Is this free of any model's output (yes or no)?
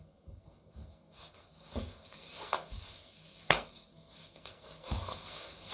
no